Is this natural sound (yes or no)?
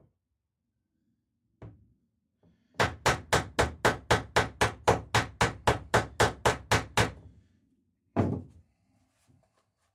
yes